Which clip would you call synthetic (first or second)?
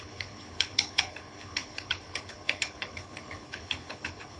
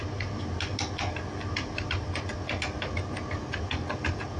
first